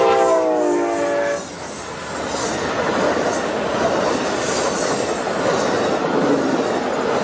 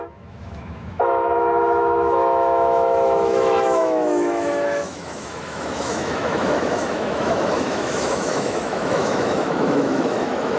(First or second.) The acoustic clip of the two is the first